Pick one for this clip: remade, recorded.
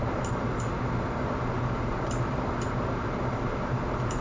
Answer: remade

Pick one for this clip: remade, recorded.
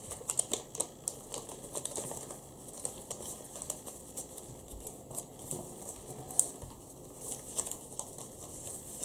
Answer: recorded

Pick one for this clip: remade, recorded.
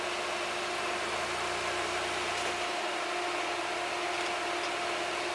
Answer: recorded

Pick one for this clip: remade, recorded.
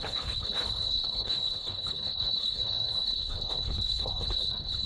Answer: remade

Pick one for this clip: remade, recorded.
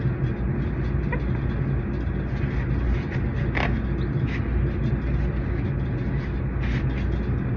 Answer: recorded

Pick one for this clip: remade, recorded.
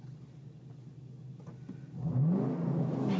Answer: recorded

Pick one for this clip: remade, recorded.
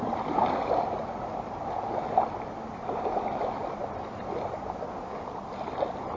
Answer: recorded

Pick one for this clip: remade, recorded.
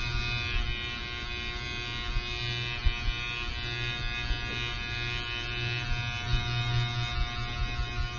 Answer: recorded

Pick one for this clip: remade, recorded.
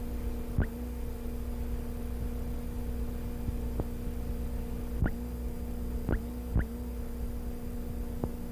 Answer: recorded